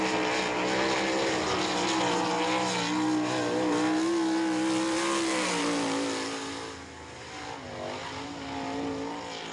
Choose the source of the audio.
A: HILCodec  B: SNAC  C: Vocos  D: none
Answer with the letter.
D